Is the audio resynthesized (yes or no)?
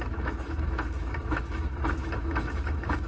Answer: yes